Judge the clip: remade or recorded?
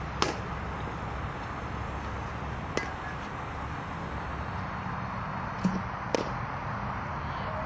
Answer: recorded